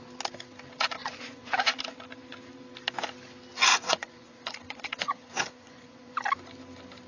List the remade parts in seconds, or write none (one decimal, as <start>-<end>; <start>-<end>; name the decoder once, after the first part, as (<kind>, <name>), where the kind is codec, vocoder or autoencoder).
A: 1.0-1.8 (vocoder, Vocos); 3.7-6.1